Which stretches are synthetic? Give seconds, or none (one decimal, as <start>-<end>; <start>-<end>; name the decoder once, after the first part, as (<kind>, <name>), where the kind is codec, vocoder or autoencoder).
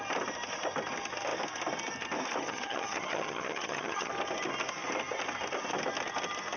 2.4-4.1 (vocoder, HiFi-GAN)